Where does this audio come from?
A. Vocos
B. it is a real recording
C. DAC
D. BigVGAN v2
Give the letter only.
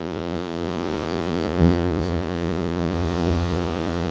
A